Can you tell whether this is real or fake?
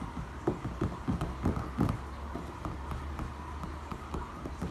real